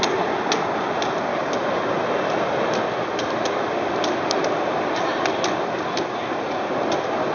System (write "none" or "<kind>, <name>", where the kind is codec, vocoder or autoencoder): none